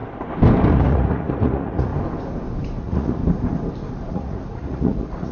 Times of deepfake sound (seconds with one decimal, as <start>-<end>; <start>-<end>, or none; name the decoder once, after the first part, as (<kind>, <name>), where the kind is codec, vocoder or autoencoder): 0.7-1.9 (vocoder, Vocos); 2.8-3.2; 4.1-5.3